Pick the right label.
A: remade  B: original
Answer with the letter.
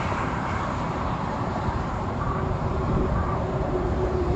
A